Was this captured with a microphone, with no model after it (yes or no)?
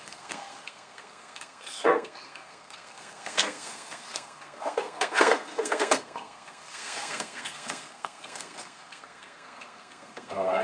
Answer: no